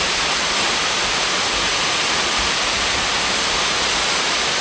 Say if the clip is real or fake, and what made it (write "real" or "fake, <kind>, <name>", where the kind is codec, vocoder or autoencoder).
real